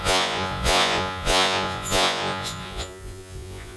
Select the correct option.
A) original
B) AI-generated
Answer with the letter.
B